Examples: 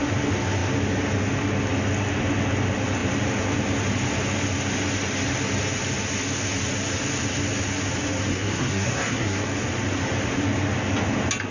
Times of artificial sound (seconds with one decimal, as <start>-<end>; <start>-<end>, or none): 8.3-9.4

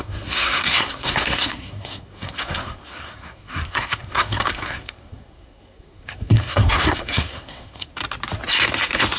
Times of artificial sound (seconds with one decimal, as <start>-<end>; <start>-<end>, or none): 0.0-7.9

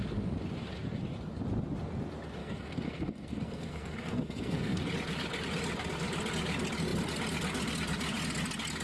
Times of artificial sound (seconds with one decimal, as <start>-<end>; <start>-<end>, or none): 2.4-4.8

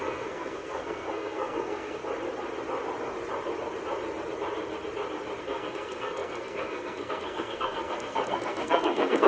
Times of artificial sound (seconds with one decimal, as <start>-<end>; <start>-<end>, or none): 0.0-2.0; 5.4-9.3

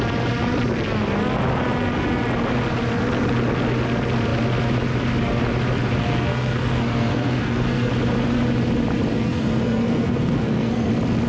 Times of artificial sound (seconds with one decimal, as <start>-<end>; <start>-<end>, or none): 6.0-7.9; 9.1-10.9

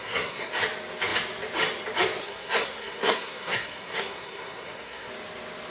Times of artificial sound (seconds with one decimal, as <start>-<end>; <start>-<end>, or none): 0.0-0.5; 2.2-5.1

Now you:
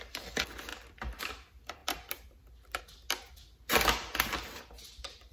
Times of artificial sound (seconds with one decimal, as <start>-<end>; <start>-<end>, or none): none

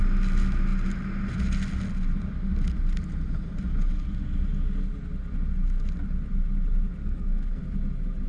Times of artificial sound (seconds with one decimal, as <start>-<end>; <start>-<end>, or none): 7.0-7.6